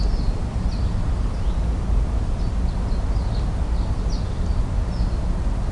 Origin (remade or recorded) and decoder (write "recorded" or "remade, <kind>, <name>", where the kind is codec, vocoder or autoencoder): recorded